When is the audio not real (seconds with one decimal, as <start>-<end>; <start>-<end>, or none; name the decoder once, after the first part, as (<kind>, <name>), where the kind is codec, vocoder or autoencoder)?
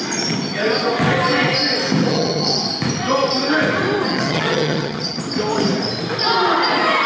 2.1-2.6 (vocoder, HiFi-GAN); 4.1-5.2